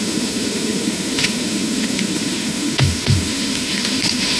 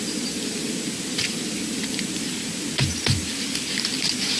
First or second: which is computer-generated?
first